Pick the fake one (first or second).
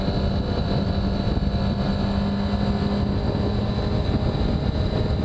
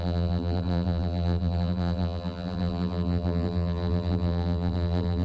second